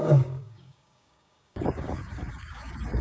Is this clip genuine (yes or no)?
no